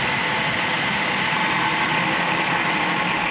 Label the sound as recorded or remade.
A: recorded